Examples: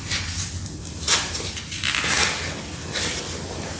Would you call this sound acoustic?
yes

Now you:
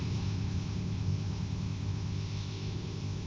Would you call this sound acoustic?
no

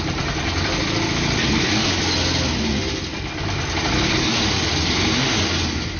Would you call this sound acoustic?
yes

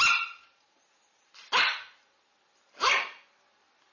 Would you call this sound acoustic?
yes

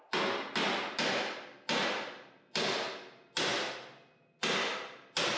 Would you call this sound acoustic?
yes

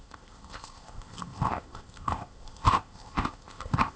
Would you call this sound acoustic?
no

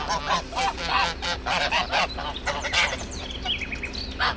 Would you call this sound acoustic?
yes